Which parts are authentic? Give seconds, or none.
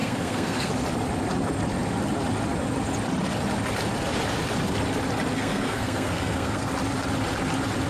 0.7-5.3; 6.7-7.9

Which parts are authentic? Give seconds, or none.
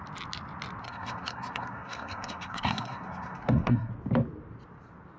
0.0-0.8; 3.9-5.2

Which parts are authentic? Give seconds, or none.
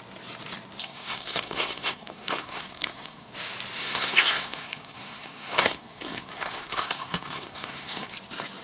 0.0-0.8; 3.3-3.8; 8.1-8.6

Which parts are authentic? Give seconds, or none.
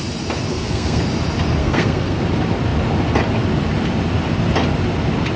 0.0-0.5; 1.0-1.6; 2.2-5.4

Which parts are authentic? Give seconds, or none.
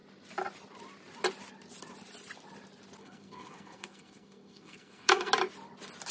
0.0-3.0; 5.3-6.1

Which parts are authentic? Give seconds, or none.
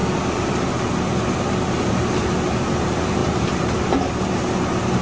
0.0-5.0